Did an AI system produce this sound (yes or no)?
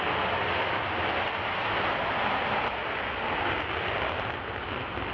no